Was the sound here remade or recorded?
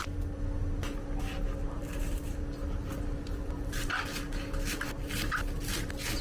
recorded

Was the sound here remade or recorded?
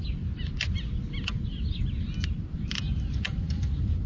recorded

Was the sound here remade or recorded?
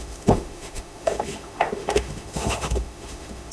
remade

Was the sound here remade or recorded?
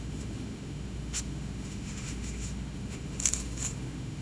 remade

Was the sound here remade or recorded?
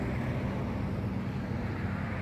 recorded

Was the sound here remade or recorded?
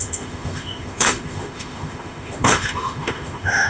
remade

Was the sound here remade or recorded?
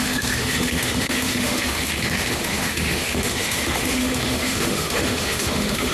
remade